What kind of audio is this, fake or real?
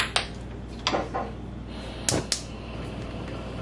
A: real